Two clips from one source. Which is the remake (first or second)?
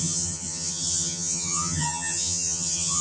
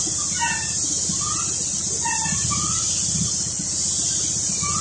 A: first